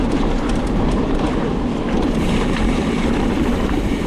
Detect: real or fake fake